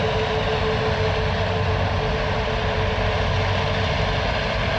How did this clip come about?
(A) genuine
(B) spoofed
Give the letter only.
A